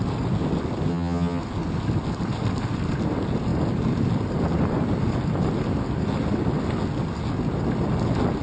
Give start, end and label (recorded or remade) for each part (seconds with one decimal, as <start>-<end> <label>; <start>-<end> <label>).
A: 0.0-0.9 recorded; 0.9-1.4 remade; 1.4-8.4 recorded